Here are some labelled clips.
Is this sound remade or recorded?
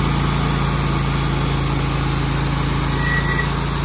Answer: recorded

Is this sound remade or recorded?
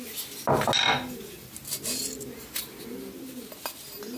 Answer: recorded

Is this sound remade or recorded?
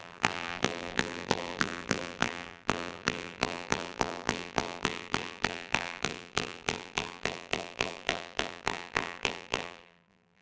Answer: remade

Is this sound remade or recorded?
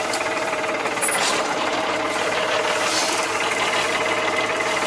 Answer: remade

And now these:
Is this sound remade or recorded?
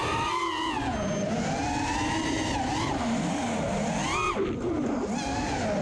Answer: recorded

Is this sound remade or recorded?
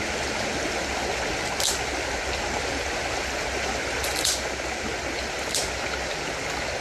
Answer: recorded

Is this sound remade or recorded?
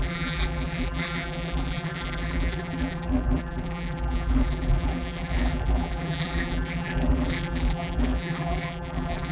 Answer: remade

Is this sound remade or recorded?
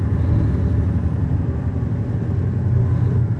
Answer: recorded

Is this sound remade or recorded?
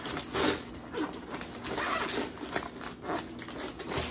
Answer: recorded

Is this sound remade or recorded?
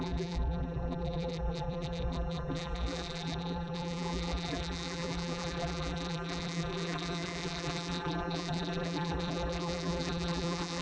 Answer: remade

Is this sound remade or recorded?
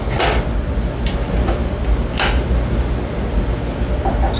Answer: recorded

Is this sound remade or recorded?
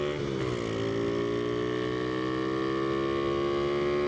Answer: recorded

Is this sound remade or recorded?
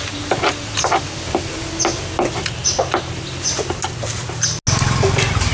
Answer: recorded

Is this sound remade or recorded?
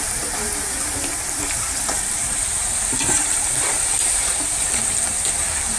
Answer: remade